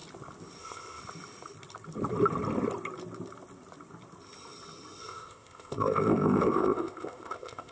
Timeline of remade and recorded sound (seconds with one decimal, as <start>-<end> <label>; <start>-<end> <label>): 0.0-0.6 recorded; 0.6-1.0 remade; 1.0-5.0 recorded; 5.0-7.7 remade